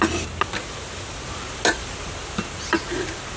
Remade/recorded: recorded